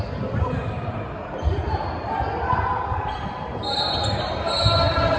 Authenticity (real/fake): real